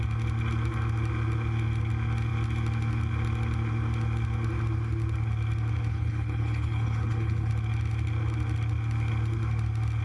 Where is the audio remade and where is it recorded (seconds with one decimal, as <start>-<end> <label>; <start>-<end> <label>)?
0.0-5.9 recorded; 5.9-7.5 remade; 7.5-10.0 recorded